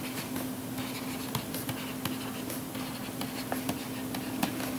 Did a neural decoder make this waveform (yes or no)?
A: no